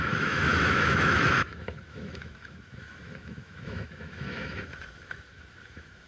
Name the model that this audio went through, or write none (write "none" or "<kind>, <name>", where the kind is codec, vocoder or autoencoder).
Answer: autoencoder, DAC-VAE